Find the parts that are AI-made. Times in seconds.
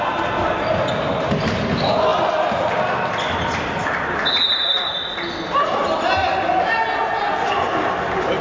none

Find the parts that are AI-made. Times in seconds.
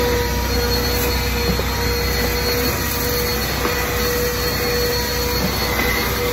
none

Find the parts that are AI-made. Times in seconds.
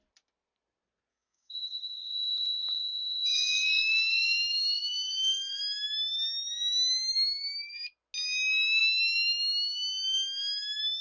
1.1-5.6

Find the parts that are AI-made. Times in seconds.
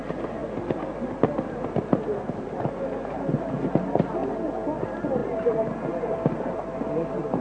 none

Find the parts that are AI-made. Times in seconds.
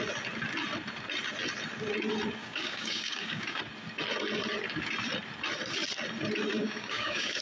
2.4-3.6; 6.5-7.4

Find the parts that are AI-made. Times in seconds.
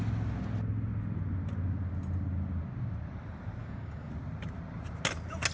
3.6-4.1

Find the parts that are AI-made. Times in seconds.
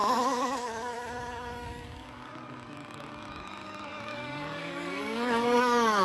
0.0-6.0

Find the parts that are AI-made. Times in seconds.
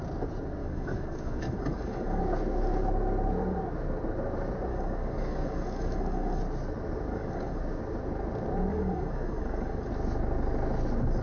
0.6-2.2; 4.7-6.4; 7.1-7.6; 8.7-9.9